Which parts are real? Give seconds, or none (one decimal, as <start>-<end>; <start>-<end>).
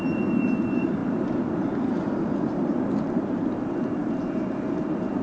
none